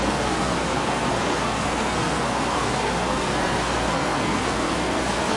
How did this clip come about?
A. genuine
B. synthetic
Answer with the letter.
B